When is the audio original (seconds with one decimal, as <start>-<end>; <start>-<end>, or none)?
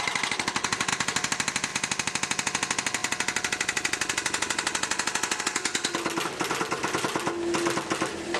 0.0-8.4